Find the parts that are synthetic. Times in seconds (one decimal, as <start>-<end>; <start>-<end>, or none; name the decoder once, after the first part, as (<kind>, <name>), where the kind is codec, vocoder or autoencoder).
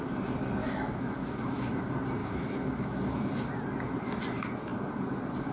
0.6-1.8 (autoencoder, DAC-VAE); 2.2-3.3